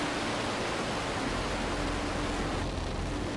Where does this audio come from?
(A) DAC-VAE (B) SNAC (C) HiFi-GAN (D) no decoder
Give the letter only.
D